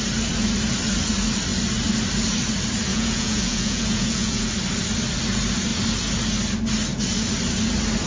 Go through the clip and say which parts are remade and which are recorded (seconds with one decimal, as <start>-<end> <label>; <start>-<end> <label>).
0.0-2.9 recorded; 2.9-4.5 remade; 4.5-8.1 recorded